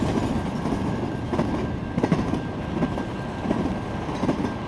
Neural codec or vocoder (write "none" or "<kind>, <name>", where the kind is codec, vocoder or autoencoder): none